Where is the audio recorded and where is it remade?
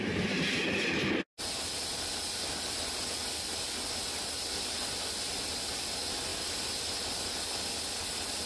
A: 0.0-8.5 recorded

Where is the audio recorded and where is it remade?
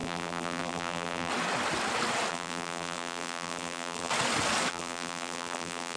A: 0.0-1.3 remade; 1.3-2.3 recorded; 2.3-4.1 remade; 4.1-4.7 recorded; 4.7-6.0 remade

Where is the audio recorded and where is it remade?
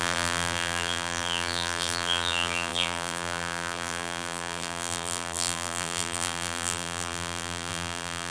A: 0.0-8.3 remade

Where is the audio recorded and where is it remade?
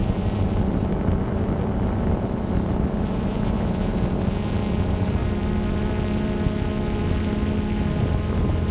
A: 0.0-3.4 remade; 3.4-5.2 recorded; 5.2-5.8 remade; 5.8-8.7 recorded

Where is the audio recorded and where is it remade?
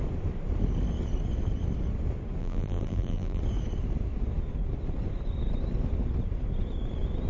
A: 0.0-2.4 recorded; 2.4-3.4 remade; 3.4-7.3 recorded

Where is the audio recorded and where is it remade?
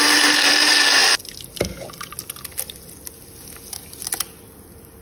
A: 0.0-5.0 recorded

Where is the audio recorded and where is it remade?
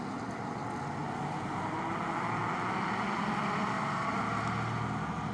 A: 0.0-1.0 recorded; 1.0-4.2 remade; 4.2-5.3 recorded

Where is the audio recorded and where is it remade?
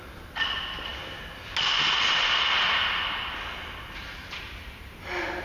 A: 0.0-5.4 recorded